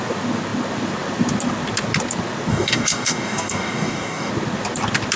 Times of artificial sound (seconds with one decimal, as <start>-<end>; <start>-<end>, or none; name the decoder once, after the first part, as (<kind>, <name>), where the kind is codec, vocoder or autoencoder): 2.5-4.3 (codec, DAC)